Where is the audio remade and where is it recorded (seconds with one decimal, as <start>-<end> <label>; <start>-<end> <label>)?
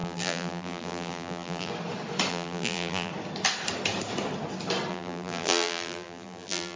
0.0-1.7 remade; 1.7-2.3 recorded; 2.3-3.1 remade; 3.1-4.9 recorded; 4.9-6.8 remade